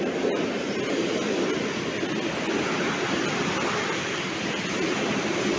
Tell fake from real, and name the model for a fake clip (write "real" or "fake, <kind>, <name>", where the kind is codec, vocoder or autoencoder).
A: real